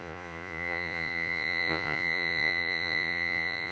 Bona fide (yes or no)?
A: no